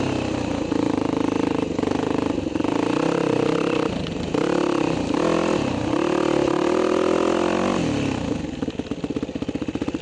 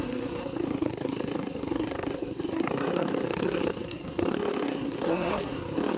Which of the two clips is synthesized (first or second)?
second